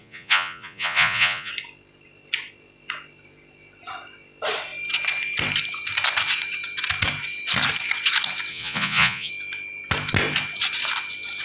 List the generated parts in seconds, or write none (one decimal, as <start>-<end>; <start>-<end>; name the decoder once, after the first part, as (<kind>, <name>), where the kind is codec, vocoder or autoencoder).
0.0-1.5 (vocoder, Vocos); 8.5-9.3